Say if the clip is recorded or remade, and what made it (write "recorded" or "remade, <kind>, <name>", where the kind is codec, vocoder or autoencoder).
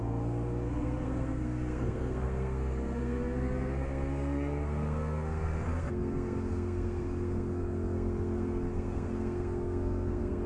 remade, codec, SNAC